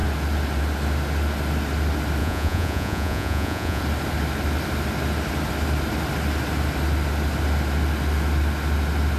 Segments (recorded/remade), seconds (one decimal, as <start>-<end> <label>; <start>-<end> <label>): 0.0-2.2 recorded; 2.2-3.8 remade; 3.8-9.2 recorded